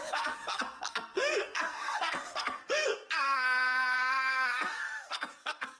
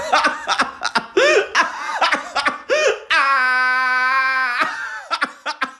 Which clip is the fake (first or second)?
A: first